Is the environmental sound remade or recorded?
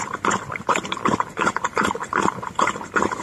recorded